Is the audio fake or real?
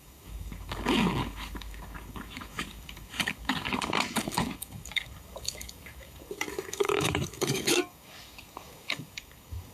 fake